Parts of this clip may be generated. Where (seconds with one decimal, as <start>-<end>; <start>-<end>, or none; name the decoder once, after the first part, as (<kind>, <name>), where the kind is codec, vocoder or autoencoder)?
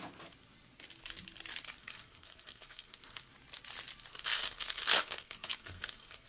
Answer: 1.8-3.3 (codec, SNAC); 4.1-6.3